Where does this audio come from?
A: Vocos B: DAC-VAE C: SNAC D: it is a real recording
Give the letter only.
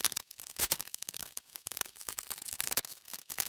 C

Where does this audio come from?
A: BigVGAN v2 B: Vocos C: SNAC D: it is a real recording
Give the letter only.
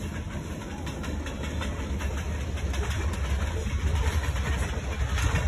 D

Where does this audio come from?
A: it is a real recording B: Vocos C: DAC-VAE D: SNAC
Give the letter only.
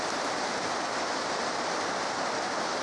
A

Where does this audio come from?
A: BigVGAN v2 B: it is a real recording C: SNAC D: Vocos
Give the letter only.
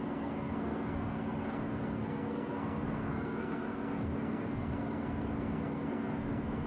C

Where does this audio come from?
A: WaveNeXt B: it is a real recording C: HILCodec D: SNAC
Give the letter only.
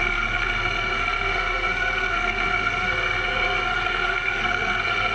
D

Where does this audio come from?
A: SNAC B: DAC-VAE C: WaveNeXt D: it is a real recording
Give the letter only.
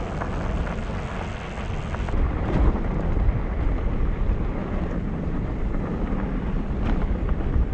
D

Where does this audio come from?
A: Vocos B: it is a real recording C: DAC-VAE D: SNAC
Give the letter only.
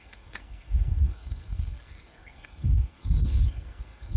D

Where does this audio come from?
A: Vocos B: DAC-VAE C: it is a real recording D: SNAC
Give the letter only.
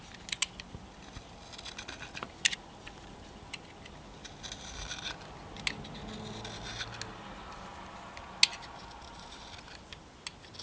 C